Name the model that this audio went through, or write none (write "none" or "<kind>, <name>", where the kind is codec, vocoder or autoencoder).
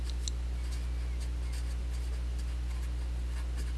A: none